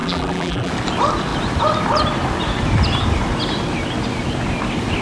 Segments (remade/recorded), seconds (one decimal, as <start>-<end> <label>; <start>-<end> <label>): 0.0-0.7 remade; 0.7-5.0 recorded